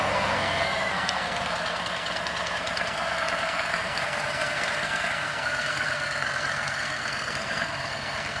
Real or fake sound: fake